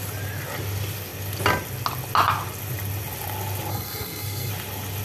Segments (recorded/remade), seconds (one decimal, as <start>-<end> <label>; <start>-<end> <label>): 0.0-3.7 recorded; 3.7-4.5 remade; 4.5-5.0 recorded